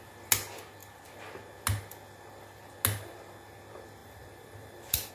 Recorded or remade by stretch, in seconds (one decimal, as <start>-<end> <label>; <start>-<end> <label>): 0.0-4.0 recorded; 4.0-5.1 remade